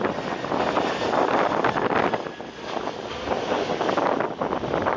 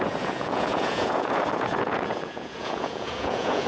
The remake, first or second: second